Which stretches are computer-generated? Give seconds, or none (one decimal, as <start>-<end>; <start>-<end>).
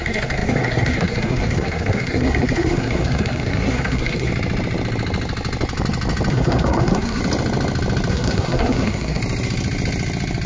0.0-4.3; 6.3-7.2; 8.1-9.2